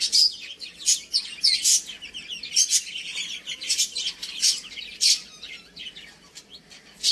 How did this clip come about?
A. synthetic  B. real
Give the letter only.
B